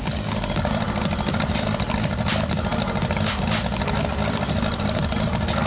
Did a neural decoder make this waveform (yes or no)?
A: no